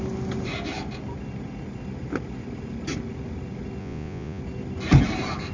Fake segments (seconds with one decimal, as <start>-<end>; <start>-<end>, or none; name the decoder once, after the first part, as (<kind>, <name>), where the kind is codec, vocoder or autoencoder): 3.8-4.4 (vocoder, Vocos)